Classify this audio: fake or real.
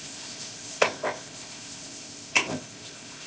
fake